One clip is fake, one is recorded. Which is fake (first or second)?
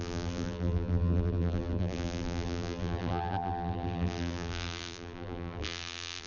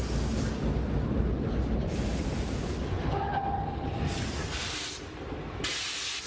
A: first